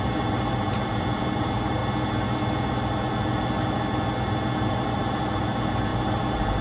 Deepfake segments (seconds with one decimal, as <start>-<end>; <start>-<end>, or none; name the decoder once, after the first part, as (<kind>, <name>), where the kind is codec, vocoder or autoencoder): 0.0-1.8 (vocoder, BigVGAN v2); 4.7-6.6